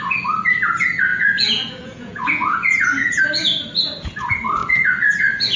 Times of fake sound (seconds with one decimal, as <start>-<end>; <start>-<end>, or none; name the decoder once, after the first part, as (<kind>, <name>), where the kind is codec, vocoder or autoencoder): 1.1-3.2 (vocoder, Vocos)